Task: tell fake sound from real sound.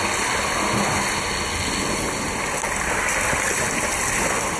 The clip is real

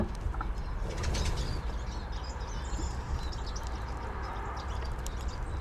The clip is real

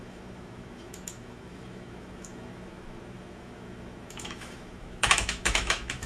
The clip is fake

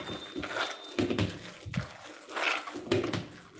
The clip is real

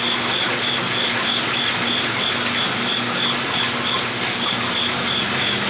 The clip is real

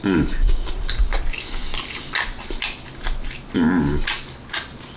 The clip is real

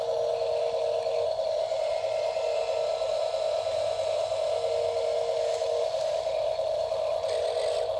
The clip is real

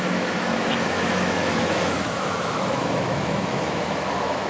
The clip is fake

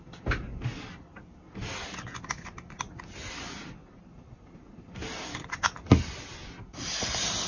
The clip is real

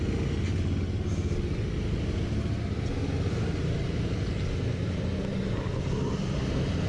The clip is real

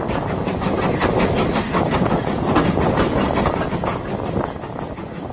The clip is real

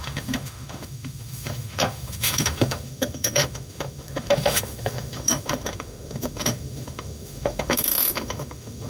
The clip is fake